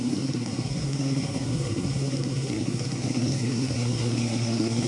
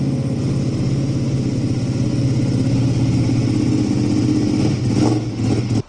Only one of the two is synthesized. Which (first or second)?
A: first